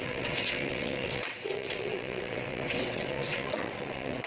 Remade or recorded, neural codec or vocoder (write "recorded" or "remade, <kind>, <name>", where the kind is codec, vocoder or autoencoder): remade, vocoder, WaveNeXt